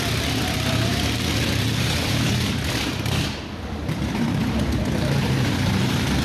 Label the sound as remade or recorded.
remade